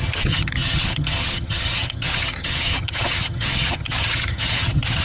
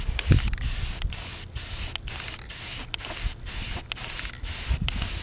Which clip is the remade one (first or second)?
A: first